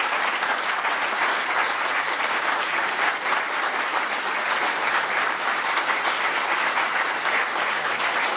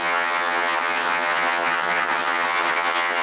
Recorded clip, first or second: first